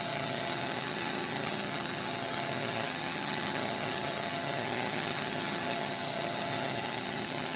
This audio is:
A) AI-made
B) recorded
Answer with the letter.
A